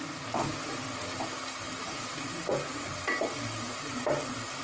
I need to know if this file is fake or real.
real